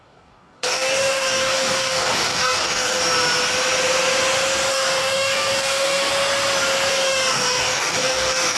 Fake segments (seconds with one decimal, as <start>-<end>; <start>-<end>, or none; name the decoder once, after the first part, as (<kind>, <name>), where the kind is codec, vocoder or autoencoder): 0.0-3.0 (codec, DAC); 4.7-6.1; 6.9-8.6

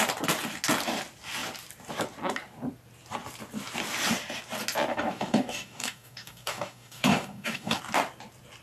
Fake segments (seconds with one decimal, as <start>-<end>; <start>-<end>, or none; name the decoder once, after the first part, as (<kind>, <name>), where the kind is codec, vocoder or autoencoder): 4.9-7.8 (codec, DAC)

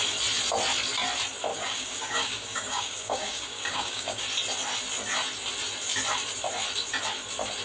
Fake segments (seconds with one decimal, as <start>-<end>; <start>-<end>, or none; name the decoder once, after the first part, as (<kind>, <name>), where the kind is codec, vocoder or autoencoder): 1.5-4.2 (codec, DAC)

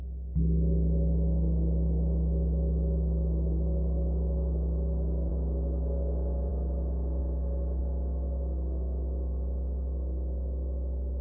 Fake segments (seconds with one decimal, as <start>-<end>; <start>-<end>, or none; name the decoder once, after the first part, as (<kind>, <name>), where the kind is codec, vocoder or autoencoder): none

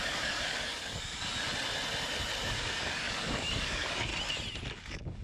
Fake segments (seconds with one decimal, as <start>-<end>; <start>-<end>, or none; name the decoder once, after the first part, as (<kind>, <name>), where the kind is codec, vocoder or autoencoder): 0.0-1.3 (codec, DAC); 2.4-4.1; 4.7-5.2